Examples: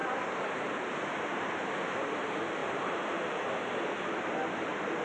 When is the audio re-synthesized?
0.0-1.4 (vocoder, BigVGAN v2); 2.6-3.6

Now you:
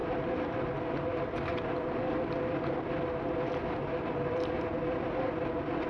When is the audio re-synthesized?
none

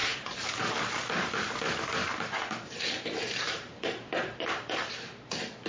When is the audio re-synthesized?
0.0-0.9 (vocoder, BigVGAN v2); 2.0-5.7

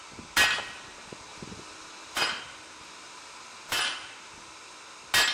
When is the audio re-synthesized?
1.3-2.2 (vocoder, BigVGAN v2); 2.8-3.8

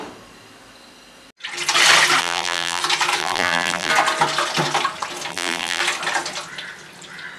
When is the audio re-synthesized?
2.2-2.8 (vocoder, BigVGAN v2); 3.2-3.9; 5.3-5.8